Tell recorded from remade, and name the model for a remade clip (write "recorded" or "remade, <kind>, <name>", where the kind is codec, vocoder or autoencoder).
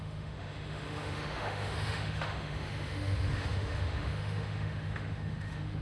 remade, autoencoder, DAC-VAE